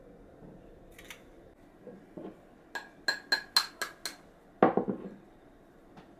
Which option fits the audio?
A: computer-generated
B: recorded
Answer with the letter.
B